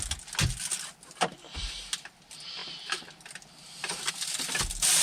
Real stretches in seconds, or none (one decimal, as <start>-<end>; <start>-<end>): 0.0-5.0